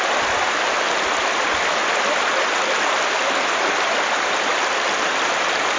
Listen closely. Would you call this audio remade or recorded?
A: remade